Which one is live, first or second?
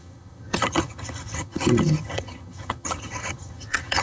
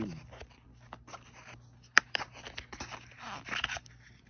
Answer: second